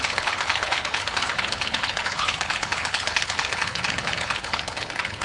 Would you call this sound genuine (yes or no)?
no